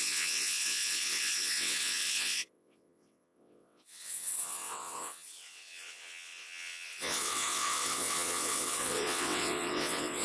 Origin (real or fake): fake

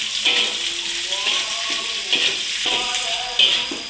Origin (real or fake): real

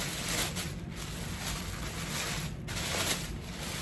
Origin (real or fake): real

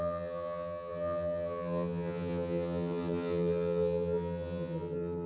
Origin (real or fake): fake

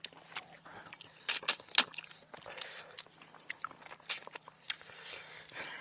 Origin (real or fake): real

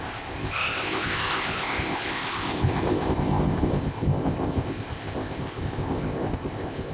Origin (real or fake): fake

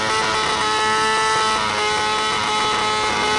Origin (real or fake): real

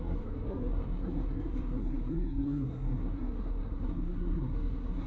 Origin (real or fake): fake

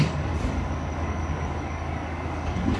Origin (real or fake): fake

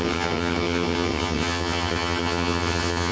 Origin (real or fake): fake